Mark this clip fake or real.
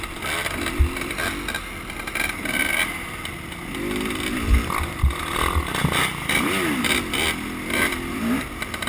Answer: real